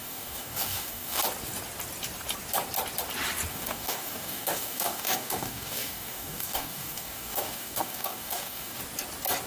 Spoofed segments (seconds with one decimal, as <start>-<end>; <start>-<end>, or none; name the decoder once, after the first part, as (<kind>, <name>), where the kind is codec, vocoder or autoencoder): 0.0-1.2 (codec, DAC); 3.5-8.8